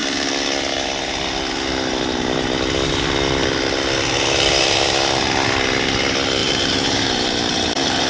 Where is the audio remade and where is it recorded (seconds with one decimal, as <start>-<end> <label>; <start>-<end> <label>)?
0.0-6.4 recorded; 6.4-8.1 remade